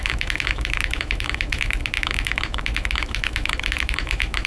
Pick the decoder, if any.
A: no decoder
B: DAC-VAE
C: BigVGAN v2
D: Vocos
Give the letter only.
B